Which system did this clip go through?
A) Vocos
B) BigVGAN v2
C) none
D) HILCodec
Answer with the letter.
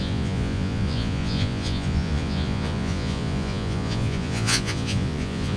A